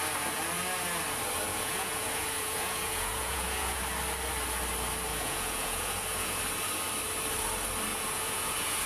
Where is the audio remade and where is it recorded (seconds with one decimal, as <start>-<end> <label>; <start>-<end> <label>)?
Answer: 0.0-1.5 recorded; 1.5-3.8 remade; 3.8-5.1 recorded; 5.1-6.4 remade; 6.4-7.9 recorded; 7.9-8.9 remade